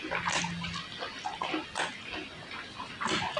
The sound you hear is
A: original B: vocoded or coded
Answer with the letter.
A